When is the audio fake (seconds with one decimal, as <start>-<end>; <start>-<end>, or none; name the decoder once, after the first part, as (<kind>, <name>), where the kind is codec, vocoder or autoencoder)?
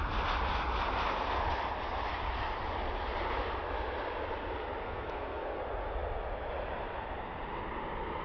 4.8-5.6 (codec, SNAC)